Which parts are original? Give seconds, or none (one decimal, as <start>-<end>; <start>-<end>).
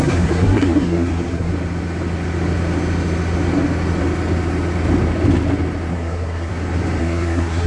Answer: 1.5-5.9; 6.5-7.0